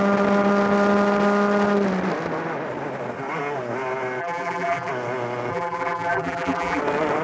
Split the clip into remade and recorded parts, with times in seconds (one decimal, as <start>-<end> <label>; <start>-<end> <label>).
0.0-4.2 recorded; 4.2-4.9 remade; 4.9-5.5 recorded; 5.5-6.8 remade; 6.8-7.2 recorded

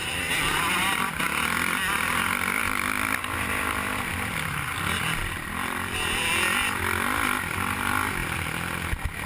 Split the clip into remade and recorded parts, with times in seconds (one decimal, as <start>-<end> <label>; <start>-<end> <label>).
0.0-1.2 remade; 1.2-5.2 recorded; 5.2-6.3 remade; 6.3-9.3 recorded

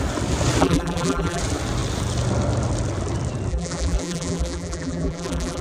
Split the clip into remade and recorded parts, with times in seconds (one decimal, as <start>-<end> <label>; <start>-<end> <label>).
0.0-0.6 recorded; 0.6-1.4 remade; 1.4-3.5 recorded; 3.5-5.6 remade

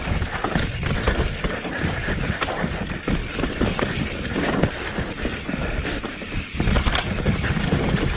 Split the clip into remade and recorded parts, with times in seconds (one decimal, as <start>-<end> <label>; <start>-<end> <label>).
0.0-8.2 recorded